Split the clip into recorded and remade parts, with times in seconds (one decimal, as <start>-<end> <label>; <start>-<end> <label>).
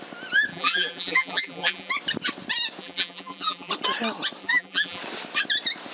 0.0-0.5 recorded; 0.5-1.9 remade; 1.9-2.8 recorded; 2.8-3.7 remade; 3.7-4.4 recorded; 4.4-5.0 remade; 5.0-5.9 recorded